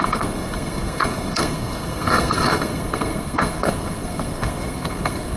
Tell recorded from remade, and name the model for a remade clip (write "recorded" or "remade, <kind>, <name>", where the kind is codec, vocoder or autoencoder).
remade, codec, SNAC